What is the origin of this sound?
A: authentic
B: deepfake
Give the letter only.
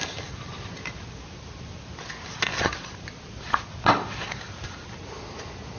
A